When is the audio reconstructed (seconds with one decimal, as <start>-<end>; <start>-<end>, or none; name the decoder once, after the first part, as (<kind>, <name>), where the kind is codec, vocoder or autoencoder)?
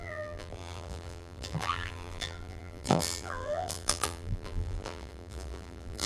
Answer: 0.0-6.1 (vocoder, BigVGAN v2)